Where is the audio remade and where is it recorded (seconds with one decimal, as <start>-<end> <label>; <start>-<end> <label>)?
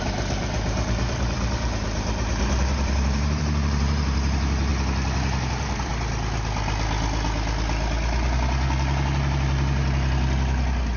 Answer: 0.0-4.7 remade; 4.7-5.4 recorded; 5.4-5.9 remade; 5.9-11.0 recorded